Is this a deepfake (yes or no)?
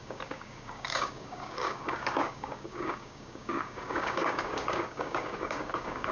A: yes